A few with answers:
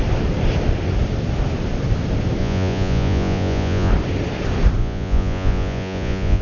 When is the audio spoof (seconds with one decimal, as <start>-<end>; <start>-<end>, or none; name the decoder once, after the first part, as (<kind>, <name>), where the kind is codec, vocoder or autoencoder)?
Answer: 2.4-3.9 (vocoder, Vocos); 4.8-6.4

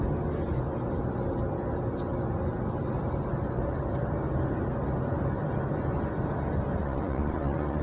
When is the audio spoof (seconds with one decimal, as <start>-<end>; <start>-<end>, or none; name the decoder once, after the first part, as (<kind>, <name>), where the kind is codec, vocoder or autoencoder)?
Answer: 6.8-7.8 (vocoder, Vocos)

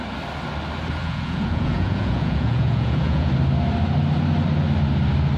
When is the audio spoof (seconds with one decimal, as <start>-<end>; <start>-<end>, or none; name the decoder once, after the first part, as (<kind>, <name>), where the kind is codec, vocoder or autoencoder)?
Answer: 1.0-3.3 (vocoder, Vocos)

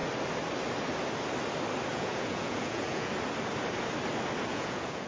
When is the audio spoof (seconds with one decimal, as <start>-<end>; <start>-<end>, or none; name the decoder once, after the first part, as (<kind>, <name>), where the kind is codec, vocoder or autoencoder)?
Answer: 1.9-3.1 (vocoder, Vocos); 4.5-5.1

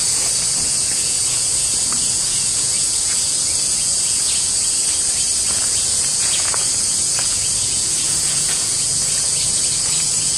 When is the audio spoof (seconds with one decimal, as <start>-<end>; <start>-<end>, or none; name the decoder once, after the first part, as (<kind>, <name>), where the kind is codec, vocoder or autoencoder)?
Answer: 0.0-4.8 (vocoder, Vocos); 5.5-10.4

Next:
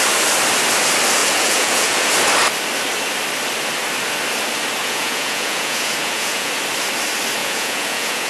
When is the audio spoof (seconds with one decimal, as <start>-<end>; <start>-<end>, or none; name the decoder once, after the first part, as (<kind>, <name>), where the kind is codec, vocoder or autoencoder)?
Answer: 1.2-2.1 (vocoder, Vocos); 4.8-6.5; 7.4-8.3

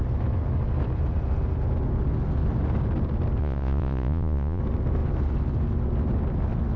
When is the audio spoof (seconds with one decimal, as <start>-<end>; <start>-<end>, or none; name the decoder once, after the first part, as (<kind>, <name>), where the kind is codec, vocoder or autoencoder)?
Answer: 3.4-4.6 (vocoder, Vocos)

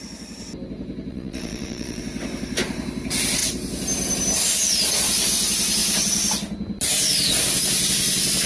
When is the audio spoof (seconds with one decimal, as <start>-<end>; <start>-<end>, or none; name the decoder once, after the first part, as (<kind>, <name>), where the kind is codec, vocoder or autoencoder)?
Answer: 1.1-2.0 (vocoder, Vocos)